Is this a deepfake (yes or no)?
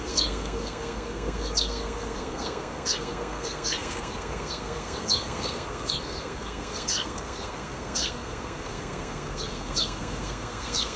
yes